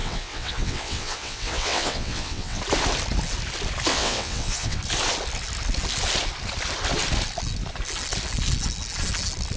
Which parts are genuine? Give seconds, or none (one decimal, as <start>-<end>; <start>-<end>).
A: 2.6-3.9; 4.8-9.6